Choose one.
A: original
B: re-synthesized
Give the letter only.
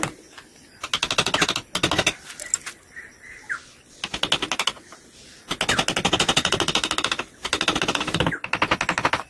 A